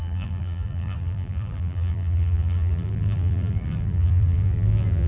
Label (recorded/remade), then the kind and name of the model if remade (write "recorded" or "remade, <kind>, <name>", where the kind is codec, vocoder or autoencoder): remade, vocoder, BigVGAN v2